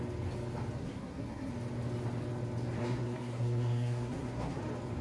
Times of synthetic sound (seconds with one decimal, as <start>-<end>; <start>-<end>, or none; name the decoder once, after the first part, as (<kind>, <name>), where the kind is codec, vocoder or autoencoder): 0.8-1.5 (codec, SNAC); 2.8-4.6

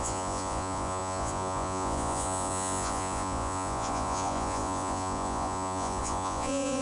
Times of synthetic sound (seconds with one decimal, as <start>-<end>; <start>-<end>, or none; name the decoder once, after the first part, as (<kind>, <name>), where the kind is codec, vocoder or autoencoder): 0.0-6.8 (vocoder, Vocos)

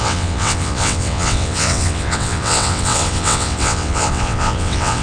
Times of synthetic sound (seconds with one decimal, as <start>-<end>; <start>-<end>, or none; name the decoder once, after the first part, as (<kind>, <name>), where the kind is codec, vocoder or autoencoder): 0.0-5.0 (vocoder, WaveNeXt)

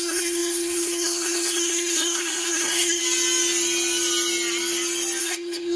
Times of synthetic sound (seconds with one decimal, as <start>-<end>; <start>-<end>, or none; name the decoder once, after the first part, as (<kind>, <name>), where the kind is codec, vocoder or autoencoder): 0.0-3.0 (codec, SNAC); 5.2-5.8

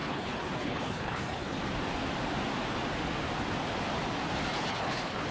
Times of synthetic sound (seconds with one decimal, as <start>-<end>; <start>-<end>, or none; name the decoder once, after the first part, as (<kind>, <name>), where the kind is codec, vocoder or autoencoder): 0.0-1.6 (codec, HILCodec); 4.5-5.3

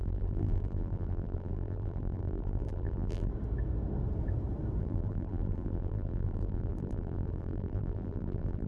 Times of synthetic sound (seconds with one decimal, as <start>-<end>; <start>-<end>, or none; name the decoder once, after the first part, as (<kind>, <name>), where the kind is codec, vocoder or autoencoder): 0.0-3.3 (vocoder, BigVGAN v2); 4.8-8.7

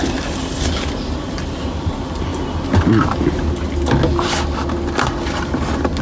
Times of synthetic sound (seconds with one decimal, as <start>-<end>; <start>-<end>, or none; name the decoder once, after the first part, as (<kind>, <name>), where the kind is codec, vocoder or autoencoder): 0.0-2.3 (vocoder, BigVGAN v2)

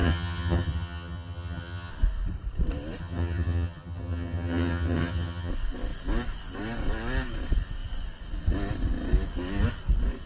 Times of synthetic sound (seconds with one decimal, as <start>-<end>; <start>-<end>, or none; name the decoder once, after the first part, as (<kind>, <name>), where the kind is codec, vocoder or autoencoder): 0.0-1.9 (vocoder, HiFi-GAN); 3.0-5.5